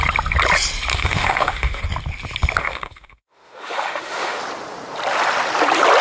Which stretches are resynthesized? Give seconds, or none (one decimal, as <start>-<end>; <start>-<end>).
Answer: 0.9-1.8; 2.6-4.4